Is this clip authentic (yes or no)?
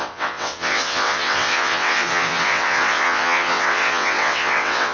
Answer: no